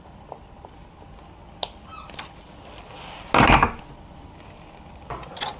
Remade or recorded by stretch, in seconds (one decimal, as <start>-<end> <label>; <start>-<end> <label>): 0.0-5.6 recorded